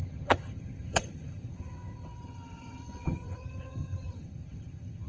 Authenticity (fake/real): fake